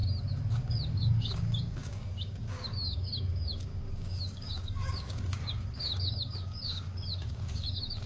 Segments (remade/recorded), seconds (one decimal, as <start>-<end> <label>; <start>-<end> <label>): 0.0-0.6 recorded; 0.6-8.1 remade